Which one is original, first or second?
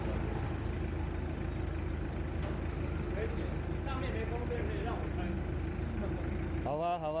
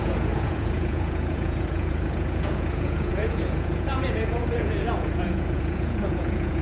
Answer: first